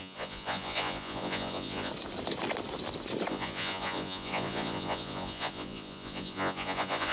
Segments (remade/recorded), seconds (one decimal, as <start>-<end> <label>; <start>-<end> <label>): 0.0-1.9 remade; 1.9-3.3 recorded; 3.3-7.1 remade